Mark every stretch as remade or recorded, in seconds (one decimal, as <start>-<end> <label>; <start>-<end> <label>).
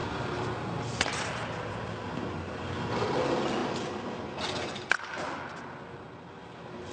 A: 0.0-6.9 recorded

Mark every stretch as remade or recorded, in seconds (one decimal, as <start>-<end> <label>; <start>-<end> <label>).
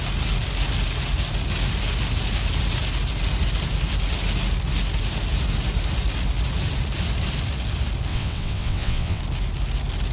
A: 0.0-8.1 recorded; 8.1-9.2 remade; 9.2-10.1 recorded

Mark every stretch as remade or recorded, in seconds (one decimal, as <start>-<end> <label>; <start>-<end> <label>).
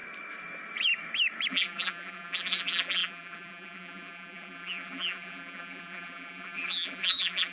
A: 0.0-1.5 recorded; 1.5-7.5 remade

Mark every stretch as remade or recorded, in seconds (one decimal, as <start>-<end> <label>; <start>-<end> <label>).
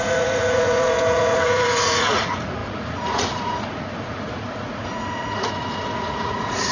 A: 0.0-6.7 remade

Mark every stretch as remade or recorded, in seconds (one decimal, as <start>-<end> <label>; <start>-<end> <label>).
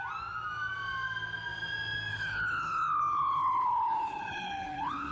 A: 0.0-2.1 recorded; 2.1-5.1 remade